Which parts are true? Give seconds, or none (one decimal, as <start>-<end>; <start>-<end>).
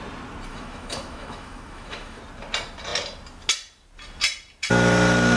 0.0-0.5; 2.2-5.4